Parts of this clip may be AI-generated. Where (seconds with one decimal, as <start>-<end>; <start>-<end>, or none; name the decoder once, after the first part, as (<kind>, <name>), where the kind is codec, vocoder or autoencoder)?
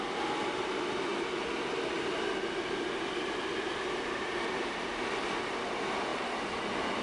none